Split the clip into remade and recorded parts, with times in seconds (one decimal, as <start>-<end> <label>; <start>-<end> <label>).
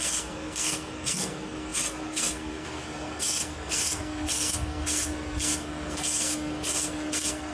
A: 0.0-7.5 remade